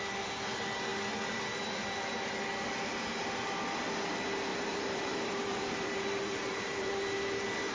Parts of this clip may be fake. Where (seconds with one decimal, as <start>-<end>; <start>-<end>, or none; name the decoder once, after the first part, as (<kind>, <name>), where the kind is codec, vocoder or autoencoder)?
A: 4.5-6.9 (vocoder, BigVGAN v2)